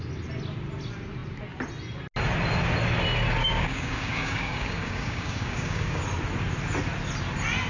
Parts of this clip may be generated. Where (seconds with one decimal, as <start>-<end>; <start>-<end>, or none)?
3.4-6.0